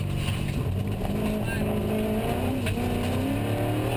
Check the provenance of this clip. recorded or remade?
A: recorded